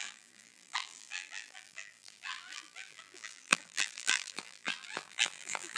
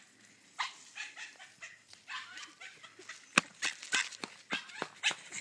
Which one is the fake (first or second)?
first